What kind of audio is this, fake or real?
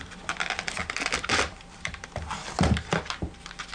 fake